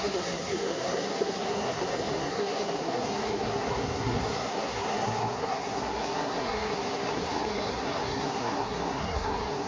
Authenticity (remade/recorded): remade